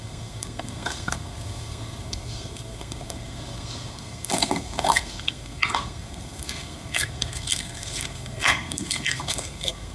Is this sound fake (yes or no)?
yes